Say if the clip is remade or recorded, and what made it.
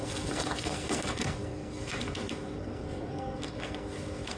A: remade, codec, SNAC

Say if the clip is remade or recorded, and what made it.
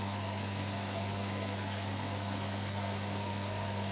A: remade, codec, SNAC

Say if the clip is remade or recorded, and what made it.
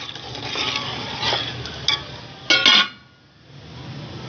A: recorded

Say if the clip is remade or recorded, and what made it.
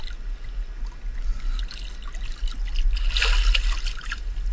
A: recorded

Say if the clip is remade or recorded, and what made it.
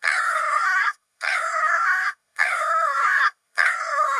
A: remade, codec, SNAC